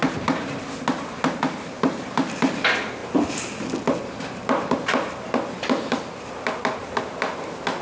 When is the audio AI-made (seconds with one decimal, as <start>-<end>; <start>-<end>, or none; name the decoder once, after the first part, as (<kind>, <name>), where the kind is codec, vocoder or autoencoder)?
none